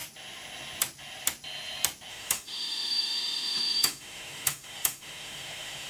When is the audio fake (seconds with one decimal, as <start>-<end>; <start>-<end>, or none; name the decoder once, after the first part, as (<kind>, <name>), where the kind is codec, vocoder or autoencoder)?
2.1-5.9 (autoencoder, DAC-VAE)